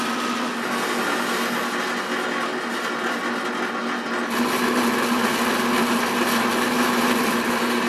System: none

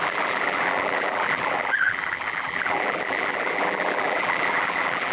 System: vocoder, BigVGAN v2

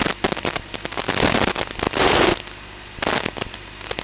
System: none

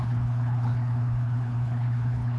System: codec, HILCodec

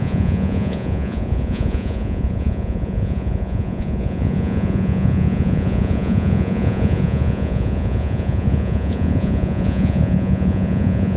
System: vocoder, Vocos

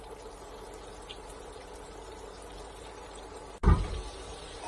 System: vocoder, BigVGAN v2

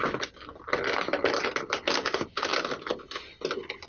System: none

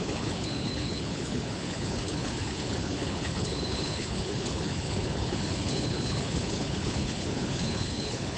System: codec, HILCodec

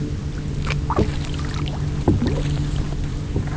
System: none